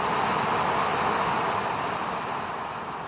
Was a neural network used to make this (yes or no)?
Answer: no